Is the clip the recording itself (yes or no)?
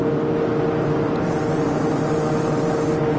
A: yes